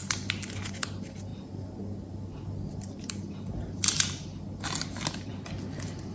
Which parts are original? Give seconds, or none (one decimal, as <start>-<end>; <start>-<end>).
0.0-6.1